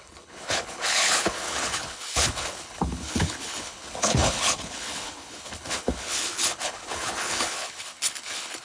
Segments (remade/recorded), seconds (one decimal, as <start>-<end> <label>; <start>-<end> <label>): 0.0-8.6 remade